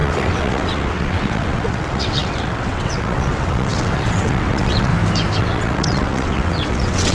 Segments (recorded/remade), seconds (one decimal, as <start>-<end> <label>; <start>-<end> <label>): 0.0-4.9 remade; 4.9-5.4 recorded; 5.4-7.1 remade